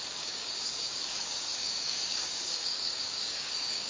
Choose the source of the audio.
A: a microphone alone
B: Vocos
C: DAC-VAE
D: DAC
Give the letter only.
D